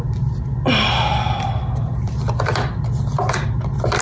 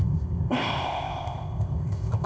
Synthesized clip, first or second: second